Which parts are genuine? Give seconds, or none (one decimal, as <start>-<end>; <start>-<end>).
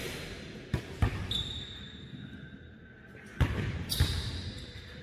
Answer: none